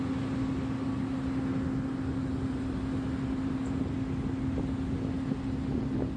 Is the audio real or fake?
real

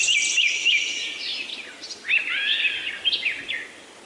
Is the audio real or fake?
real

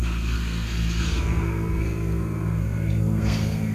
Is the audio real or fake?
fake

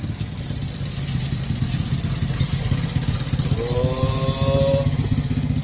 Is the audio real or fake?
real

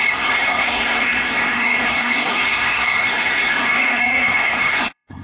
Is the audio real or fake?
fake